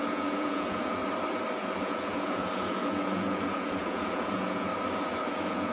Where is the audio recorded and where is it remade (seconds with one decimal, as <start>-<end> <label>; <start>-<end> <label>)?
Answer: 0.0-1.0 remade; 1.0-1.6 recorded; 1.6-4.7 remade; 4.7-5.3 recorded; 5.3-5.7 remade